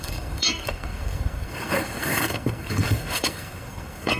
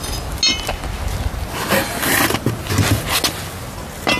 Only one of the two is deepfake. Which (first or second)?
first